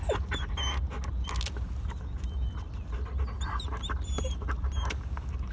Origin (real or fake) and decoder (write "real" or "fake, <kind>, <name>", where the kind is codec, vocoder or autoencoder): real